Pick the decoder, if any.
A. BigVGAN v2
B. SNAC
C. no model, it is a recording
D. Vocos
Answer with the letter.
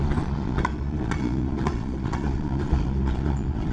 D